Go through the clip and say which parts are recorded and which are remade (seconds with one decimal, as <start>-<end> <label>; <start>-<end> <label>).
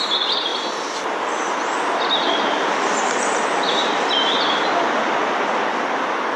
0.0-6.4 recorded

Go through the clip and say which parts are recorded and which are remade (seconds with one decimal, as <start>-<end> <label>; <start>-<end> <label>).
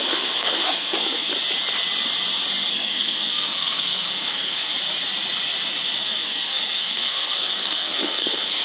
0.0-1.3 remade; 1.3-2.7 recorded; 2.7-4.7 remade; 4.7-6.0 recorded; 6.0-8.6 remade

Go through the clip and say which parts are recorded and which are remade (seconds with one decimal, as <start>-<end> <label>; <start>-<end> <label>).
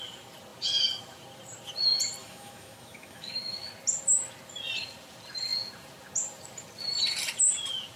0.0-2.2 recorded; 2.2-3.7 remade; 3.7-8.0 recorded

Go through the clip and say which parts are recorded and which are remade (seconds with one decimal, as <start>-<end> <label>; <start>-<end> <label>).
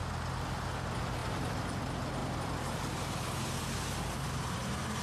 0.0-1.2 recorded; 1.2-1.8 remade; 1.8-2.2 recorded; 2.2-5.0 remade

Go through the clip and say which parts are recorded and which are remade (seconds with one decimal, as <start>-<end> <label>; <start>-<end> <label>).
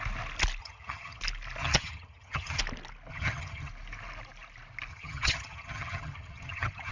0.0-0.6 recorded; 0.6-1.2 remade; 1.2-1.6 recorded; 1.6-2.6 remade; 2.6-3.1 recorded; 3.1-3.7 remade; 3.7-4.9 recorded; 4.9-6.9 remade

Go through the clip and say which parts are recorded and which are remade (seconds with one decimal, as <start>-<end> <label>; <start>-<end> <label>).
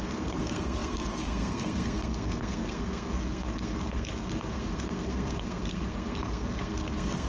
0.0-7.3 remade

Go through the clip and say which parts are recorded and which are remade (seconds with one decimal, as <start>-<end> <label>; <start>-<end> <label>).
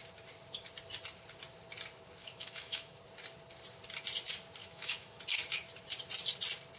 0.0-2.2 recorded; 2.2-3.0 remade; 3.0-4.6 recorded; 4.6-5.2 remade; 5.2-6.8 recorded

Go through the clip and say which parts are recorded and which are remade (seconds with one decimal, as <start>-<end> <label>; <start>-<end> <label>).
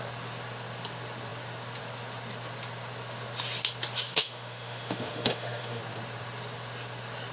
0.0-4.1 recorded; 4.1-5.8 remade; 5.8-7.3 recorded